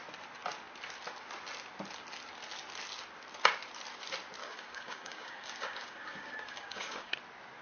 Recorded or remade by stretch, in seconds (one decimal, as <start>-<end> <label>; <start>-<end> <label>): 0.0-4.4 recorded; 4.4-7.1 remade; 7.1-7.6 recorded